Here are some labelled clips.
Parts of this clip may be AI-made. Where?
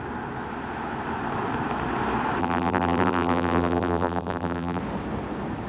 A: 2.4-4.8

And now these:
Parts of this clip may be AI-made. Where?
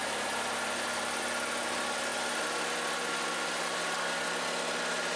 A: none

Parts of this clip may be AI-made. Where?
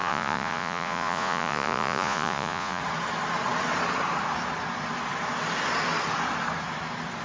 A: 0.0-2.8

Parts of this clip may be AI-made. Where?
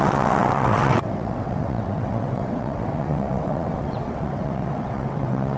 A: 0.0-5.6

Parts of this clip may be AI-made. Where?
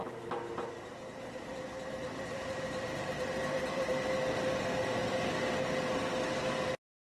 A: 1.5-3.9; 5.0-5.6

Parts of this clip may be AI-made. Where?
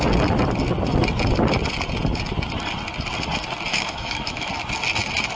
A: 3.7-4.5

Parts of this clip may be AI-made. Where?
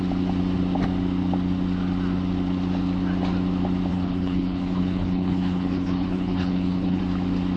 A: 3.9-7.0